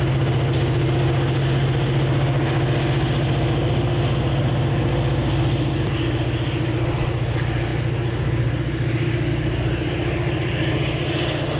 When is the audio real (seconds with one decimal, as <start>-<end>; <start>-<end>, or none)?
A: 0.0-11.6